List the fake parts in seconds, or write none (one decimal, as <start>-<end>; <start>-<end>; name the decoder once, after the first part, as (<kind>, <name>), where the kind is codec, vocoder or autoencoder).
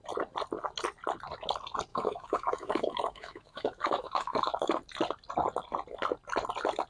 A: 1.9-4.7 (autoencoder, DAC-VAE)